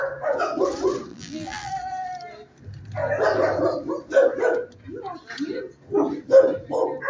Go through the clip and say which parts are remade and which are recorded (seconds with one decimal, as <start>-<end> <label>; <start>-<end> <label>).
0.0-1.1 recorded; 1.1-1.7 remade; 1.7-7.1 recorded